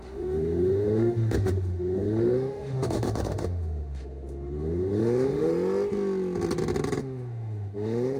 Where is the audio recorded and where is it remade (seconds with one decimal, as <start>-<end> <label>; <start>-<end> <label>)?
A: 0.0-5.5 remade; 5.5-7.0 recorded; 7.0-8.2 remade